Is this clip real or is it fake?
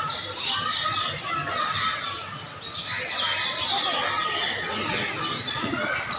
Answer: real